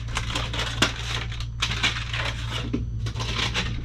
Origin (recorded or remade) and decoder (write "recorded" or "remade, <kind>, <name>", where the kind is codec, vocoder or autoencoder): recorded